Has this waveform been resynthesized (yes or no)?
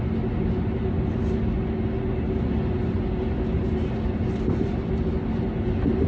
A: no